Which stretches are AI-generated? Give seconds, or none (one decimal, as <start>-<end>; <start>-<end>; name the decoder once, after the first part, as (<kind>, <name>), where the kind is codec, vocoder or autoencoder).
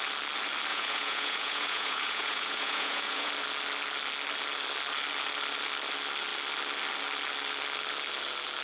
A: 0.7-3.3 (vocoder, Vocos)